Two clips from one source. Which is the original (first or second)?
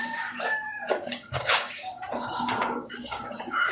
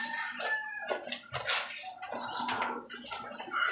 second